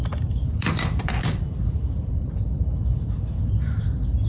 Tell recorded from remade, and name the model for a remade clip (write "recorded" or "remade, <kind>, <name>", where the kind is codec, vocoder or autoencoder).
remade, vocoder, BigVGAN v2